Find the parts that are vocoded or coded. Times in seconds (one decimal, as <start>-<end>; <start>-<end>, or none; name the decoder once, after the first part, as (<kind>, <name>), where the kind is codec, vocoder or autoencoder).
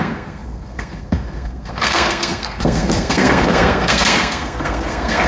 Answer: 0.0-5.3 (codec, SNAC)